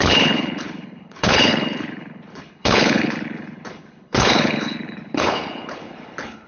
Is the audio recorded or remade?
remade